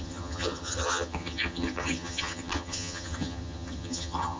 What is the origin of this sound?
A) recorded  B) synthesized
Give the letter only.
B